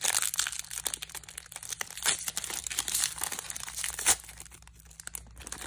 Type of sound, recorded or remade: recorded